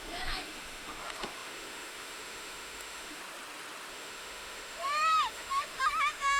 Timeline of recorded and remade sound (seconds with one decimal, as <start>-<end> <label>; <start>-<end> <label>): 0.0-3.2 remade; 3.2-3.9 recorded; 3.9-6.4 remade